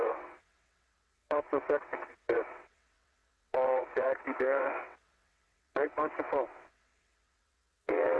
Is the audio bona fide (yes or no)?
no